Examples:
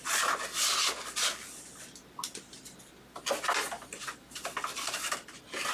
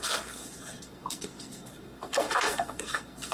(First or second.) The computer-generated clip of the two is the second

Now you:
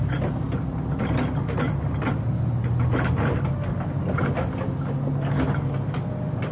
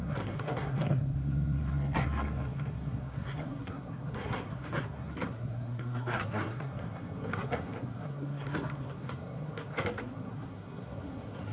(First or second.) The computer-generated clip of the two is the second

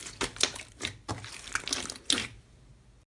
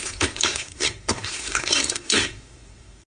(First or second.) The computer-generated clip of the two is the second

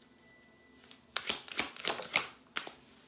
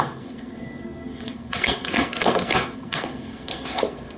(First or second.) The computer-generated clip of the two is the second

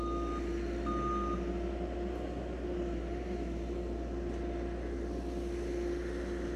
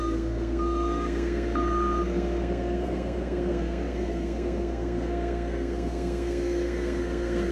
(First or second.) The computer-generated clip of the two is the second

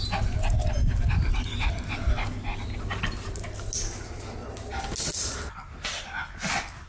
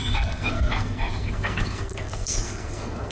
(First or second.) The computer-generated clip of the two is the second